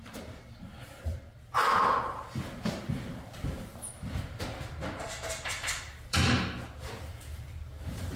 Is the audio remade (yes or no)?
yes